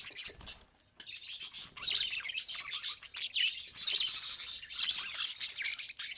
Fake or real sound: real